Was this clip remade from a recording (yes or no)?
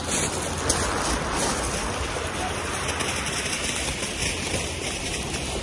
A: no